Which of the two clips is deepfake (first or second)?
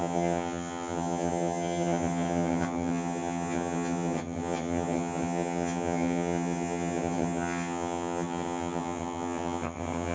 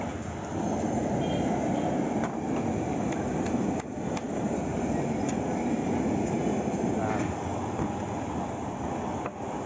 first